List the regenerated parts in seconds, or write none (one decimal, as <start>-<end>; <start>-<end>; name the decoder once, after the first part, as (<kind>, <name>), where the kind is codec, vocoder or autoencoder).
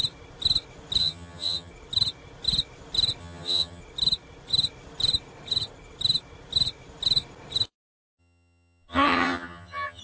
1.0-1.7 (vocoder, HiFi-GAN); 3.2-3.8; 8.2-10.0